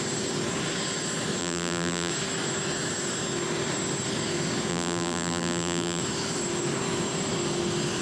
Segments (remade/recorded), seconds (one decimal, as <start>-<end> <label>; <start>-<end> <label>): 0.0-1.4 recorded; 1.4-2.1 remade; 2.1-4.7 recorded; 4.7-6.0 remade; 6.0-8.0 recorded